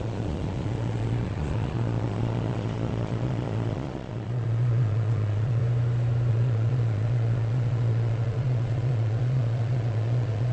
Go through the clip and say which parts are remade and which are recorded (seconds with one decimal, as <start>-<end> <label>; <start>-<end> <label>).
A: 0.0-5.6 remade; 5.6-6.3 recorded; 6.3-10.5 remade